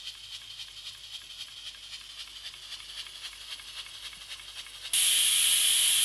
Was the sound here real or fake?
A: real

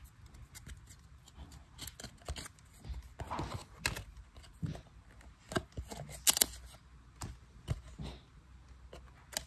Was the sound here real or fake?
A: real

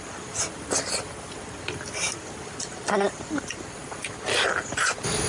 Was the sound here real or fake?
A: real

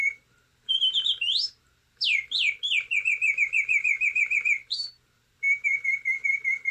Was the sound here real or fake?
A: fake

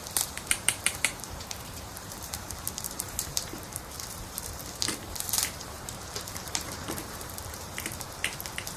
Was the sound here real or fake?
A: fake